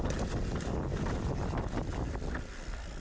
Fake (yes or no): no